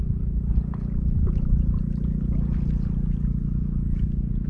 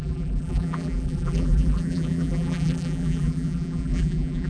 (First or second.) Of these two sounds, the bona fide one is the first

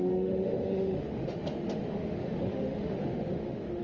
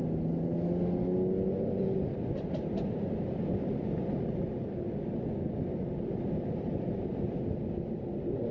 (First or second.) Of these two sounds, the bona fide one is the second